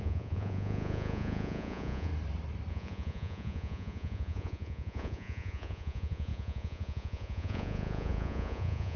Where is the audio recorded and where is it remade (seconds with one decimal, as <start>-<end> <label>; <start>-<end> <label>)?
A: 0.0-2.1 remade; 2.1-2.7 recorded; 2.7-9.0 remade